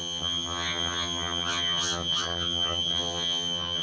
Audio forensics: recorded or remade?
remade